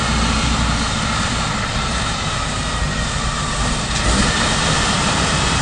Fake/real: fake